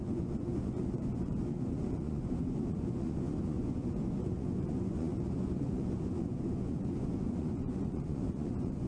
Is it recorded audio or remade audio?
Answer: remade